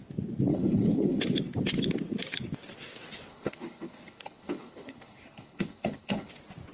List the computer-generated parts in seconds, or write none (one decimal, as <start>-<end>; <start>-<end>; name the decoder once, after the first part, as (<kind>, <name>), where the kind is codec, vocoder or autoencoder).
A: 0.5-1.2 (codec, HILCodec); 3.3-6.3